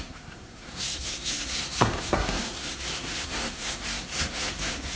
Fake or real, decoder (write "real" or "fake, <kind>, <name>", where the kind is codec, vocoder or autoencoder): fake, codec, SNAC